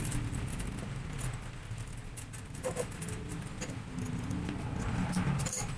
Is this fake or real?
real